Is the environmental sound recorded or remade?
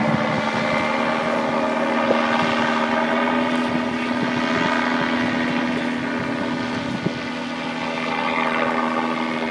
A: recorded